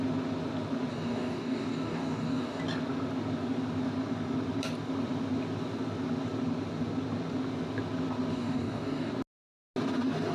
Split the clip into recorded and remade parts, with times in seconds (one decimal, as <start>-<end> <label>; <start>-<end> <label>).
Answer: 0.0-0.9 recorded; 0.9-2.6 remade; 2.6-8.3 recorded; 8.3-9.1 remade; 9.1-10.3 recorded